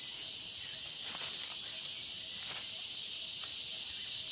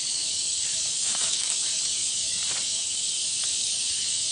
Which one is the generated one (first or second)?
second